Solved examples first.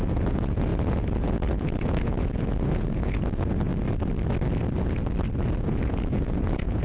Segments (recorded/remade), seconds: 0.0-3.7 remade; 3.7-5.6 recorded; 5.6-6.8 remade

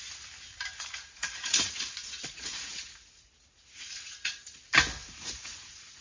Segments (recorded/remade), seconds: 0.0-1.0 recorded; 1.0-4.6 remade; 4.6-5.0 recorded; 5.0-6.0 remade

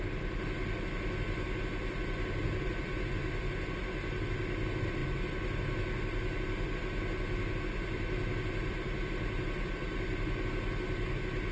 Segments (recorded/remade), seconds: 0.0-11.5 recorded

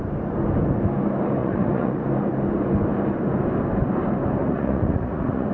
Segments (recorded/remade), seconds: 0.0-1.4 recorded; 1.4-2.0 remade; 2.0-4.4 recorded; 4.4-5.5 remade